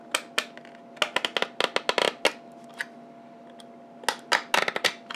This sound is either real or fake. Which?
real